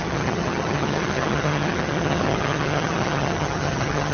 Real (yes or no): no